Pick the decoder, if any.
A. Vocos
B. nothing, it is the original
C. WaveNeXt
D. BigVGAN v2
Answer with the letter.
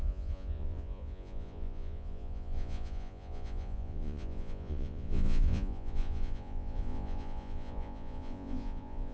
A